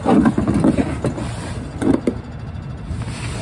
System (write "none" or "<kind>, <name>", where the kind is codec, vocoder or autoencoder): none